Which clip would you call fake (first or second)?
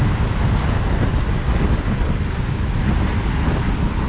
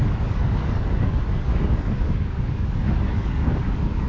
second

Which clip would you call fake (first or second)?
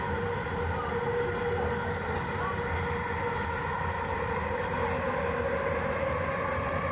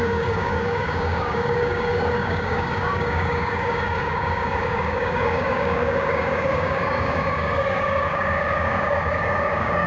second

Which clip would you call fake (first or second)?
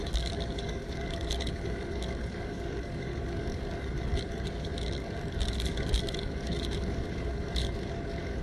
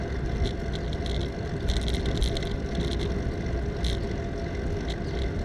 first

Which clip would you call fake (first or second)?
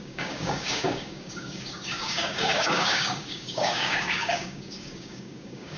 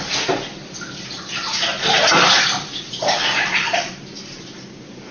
first